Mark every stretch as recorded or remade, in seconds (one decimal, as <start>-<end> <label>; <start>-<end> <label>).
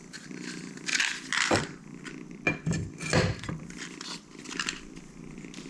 0.0-5.7 recorded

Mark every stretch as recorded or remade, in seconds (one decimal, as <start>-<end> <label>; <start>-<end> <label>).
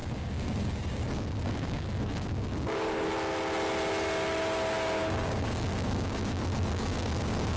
0.0-3.1 remade; 3.1-5.0 recorded; 5.0-7.6 remade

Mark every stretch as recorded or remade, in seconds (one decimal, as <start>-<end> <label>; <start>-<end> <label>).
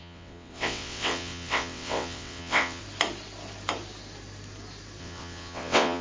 0.0-2.8 remade; 2.8-5.0 recorded; 5.0-6.0 remade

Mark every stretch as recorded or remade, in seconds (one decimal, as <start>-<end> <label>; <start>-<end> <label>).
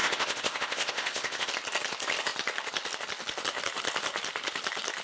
0.0-1.5 remade; 1.5-5.0 recorded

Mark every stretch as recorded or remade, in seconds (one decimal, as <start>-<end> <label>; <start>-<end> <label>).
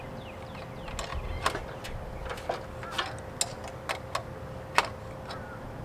0.0-5.8 recorded